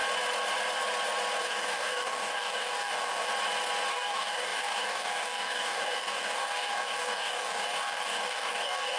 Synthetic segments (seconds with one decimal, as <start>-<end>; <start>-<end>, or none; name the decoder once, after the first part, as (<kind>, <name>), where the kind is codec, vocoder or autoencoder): 1.4-3.3 (codec, DAC); 3.9-9.0